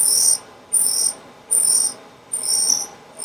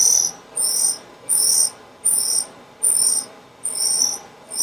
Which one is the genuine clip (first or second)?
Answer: second